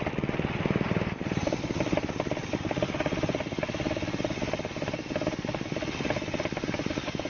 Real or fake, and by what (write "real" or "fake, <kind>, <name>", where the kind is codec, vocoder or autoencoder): real